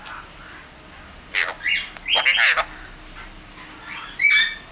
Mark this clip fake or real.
real